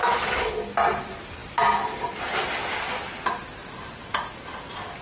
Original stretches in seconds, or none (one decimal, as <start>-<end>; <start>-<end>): 0.0-3.6